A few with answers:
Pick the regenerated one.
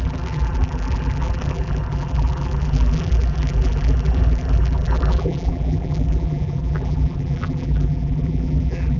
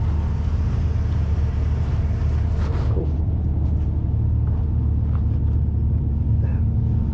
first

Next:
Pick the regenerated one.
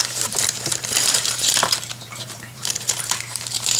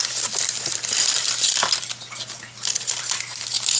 first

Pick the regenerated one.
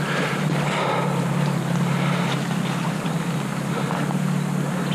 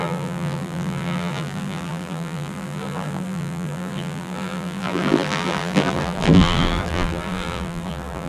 second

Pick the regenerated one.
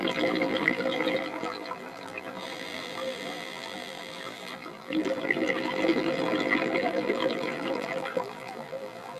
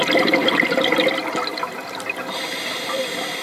first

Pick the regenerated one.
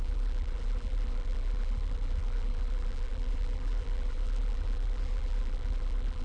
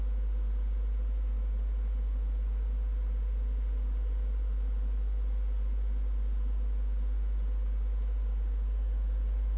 first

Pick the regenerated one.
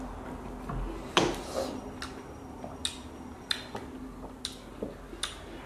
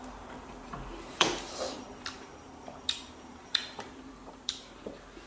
second